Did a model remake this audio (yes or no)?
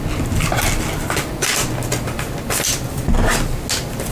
no